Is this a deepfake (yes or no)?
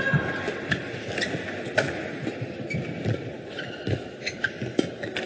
no